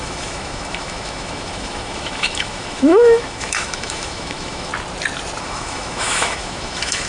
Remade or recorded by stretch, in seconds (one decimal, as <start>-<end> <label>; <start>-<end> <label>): 0.0-4.7 remade; 4.7-5.4 recorded; 5.4-7.1 remade